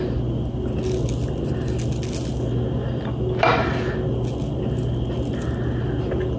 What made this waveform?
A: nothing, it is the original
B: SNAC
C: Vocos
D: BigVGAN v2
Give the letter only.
A